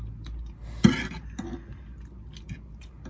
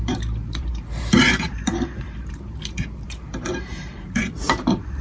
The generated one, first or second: second